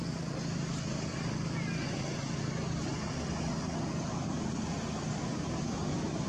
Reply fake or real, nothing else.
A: real